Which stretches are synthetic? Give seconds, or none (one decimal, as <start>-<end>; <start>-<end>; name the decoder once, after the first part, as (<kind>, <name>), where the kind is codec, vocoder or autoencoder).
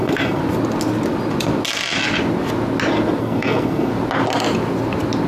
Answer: 0.0-0.4 (codec, SNAC); 3.2-3.9